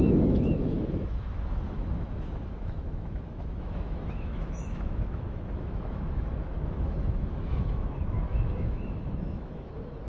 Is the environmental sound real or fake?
fake